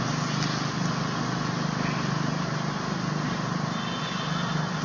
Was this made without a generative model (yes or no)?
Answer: yes